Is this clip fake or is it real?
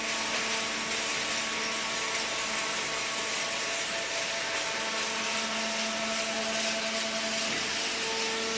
real